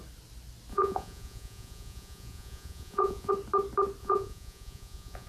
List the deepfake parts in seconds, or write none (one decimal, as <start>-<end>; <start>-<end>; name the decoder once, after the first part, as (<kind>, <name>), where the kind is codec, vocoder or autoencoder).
0.7-3.3 (vocoder, Vocos); 4.0-5.3